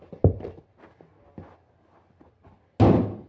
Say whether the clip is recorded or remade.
recorded